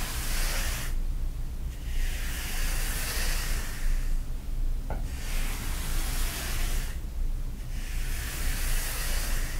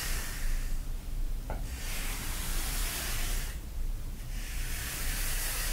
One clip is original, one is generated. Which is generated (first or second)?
second